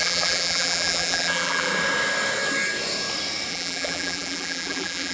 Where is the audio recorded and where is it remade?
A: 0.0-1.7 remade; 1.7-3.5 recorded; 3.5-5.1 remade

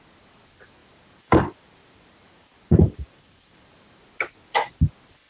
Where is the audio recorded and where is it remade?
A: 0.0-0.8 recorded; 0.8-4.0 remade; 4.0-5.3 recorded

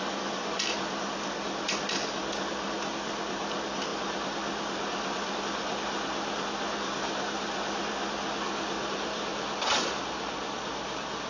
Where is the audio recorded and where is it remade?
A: 0.0-11.3 recorded

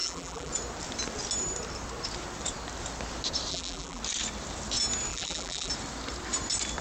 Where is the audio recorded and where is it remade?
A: 0.0-0.5 remade; 0.5-3.5 recorded; 3.5-4.0 remade; 4.0-5.1 recorded; 5.1-5.7 remade; 5.7-6.8 recorded

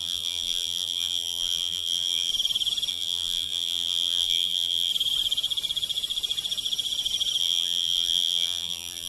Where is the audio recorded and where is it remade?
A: 0.0-2.3 remade; 2.3-2.9 recorded; 2.9-4.9 remade; 4.9-7.4 recorded; 7.4-9.1 remade

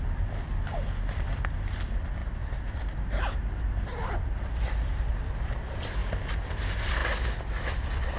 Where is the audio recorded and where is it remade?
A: 0.0-2.2 remade; 2.2-3.2 recorded; 3.2-6.0 remade; 6.0-6.5 recorded; 6.5-7.0 remade; 7.0-7.7 recorded; 7.7-8.2 remade

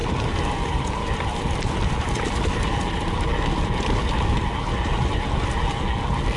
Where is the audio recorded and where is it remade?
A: 0.0-1.9 remade; 1.9-6.4 recorded